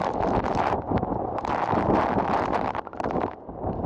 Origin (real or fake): real